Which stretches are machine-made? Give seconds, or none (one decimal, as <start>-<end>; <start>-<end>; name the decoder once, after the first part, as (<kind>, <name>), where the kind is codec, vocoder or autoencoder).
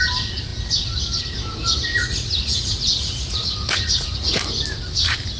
1.9-4.4 (vocoder, Vocos)